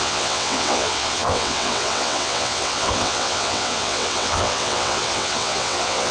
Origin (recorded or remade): remade